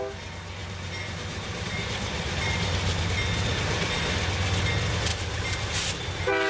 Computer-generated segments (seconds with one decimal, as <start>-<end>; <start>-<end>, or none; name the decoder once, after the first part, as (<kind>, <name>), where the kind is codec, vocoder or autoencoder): 0.6-3.0 (vocoder, BigVGAN v2); 3.5-4.0; 5.1-6.0